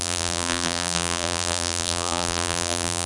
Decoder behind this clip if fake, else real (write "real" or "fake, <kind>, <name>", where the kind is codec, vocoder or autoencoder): fake, vocoder, BigVGAN v2